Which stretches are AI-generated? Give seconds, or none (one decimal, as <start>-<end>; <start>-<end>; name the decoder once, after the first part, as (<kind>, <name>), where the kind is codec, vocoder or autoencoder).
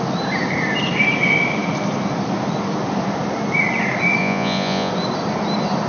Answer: 4.2-4.9 (vocoder, Vocos)